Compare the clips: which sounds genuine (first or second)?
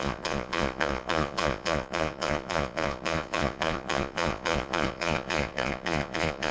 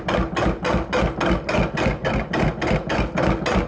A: second